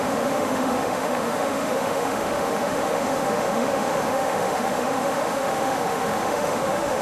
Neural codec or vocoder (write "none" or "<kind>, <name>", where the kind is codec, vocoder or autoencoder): autoencoder, DAC-VAE